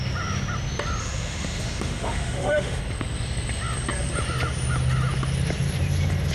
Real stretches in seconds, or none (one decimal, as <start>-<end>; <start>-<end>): 0.0-1.0; 2.8-6.3